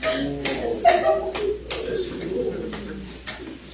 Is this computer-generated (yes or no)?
no